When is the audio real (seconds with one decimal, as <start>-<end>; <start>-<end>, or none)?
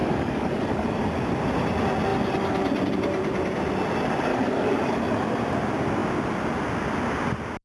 1.0-4.3; 5.0-7.6